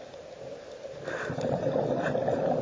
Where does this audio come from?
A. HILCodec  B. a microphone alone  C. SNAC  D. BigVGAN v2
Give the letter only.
D